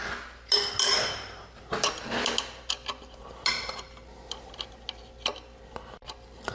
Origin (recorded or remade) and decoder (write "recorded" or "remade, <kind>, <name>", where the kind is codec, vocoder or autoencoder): recorded